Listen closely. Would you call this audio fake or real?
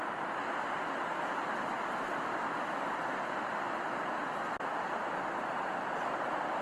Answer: real